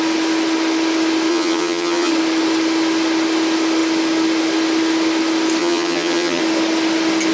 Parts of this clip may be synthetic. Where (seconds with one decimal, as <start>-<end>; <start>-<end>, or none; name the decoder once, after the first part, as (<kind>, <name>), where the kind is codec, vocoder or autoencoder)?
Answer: 1.3-2.1 (vocoder, HiFi-GAN); 5.6-6.4